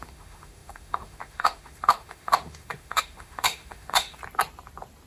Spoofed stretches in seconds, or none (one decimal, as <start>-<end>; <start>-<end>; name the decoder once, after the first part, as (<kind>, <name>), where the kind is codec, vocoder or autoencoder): 0.0-4.2 (autoencoder, DAC-VAE)